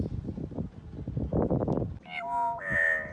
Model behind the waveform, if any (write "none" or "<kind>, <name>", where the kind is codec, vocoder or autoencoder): none